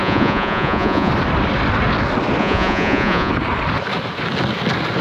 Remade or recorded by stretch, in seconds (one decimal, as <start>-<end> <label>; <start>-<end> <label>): 0.0-1.1 remade; 1.1-2.4 recorded; 2.4-3.3 remade; 3.3-5.0 recorded

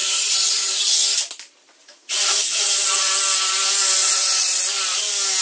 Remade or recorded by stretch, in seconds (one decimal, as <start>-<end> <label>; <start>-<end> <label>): 0.0-0.7 remade; 0.7-1.8 recorded; 1.8-3.1 remade; 3.1-4.0 recorded; 4.0-4.6 remade; 4.6-5.4 recorded

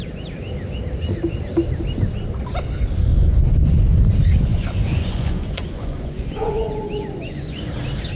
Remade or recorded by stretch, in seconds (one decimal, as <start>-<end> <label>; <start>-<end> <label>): 0.0-3.1 recorded; 3.1-3.9 remade; 3.9-4.5 recorded; 4.5-7.7 remade; 7.7-8.2 recorded

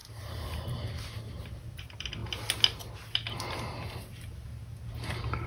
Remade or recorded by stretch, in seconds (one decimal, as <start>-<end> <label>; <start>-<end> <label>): 0.0-5.5 recorded

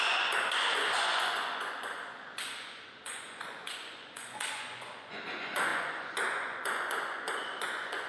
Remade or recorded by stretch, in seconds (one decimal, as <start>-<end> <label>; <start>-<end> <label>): 0.0-8.1 remade